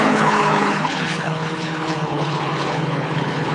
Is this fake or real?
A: fake